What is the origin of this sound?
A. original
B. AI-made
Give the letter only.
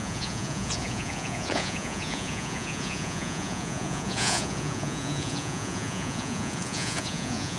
B